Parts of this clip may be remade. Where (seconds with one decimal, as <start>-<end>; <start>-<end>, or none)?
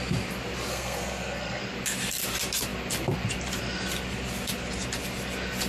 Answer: 0.7-1.6